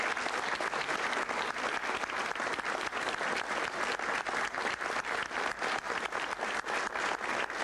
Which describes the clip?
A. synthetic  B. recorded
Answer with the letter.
B